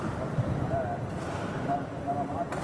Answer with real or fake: fake